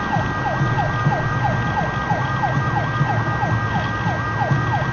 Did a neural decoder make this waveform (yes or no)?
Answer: no